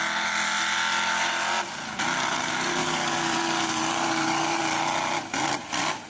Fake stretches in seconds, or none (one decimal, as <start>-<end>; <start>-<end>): 2.8-4.6